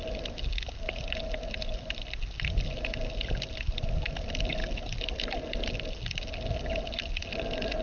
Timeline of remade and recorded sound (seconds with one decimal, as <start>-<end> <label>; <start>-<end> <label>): 0.0-7.8 recorded